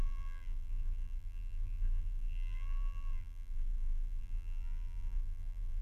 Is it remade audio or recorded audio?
remade